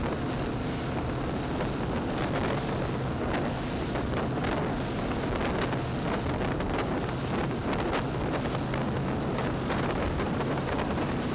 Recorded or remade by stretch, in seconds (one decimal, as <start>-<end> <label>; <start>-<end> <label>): 0.0-9.3 recorded; 9.3-11.3 remade